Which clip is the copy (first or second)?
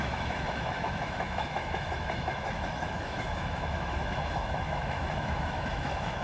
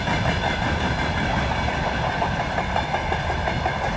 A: first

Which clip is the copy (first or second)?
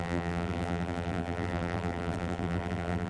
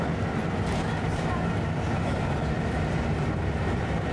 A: first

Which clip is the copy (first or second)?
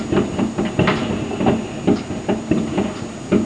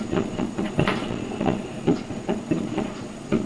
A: second